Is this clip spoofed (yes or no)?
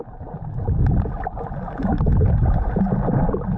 no